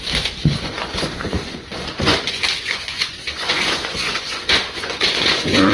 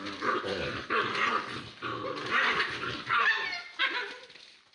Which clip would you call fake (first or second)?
first